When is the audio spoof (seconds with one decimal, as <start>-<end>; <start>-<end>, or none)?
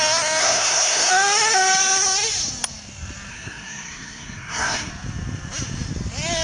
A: 0.4-1.1; 3.3-4.9